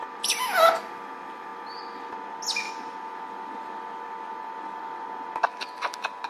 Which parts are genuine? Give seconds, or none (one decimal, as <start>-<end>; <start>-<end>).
0.0-6.3